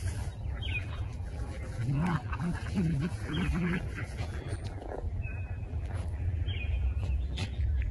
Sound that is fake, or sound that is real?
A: fake